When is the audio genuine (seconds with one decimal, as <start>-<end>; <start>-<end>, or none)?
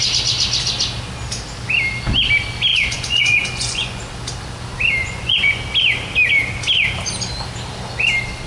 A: 0.0-2.7; 4.0-5.0; 5.6-8.5